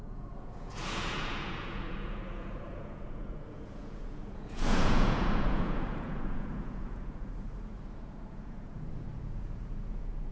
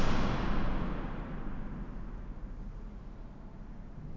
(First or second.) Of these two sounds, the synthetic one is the first